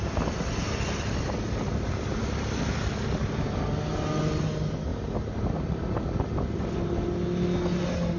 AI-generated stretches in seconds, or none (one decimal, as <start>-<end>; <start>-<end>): none